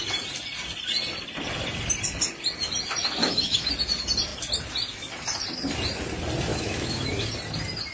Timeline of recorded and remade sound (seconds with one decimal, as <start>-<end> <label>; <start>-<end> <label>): 0.0-3.2 recorded; 3.2-3.7 remade; 3.7-6.5 recorded; 6.5-7.1 remade; 7.1-7.9 recorded